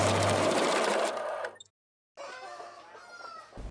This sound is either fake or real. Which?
real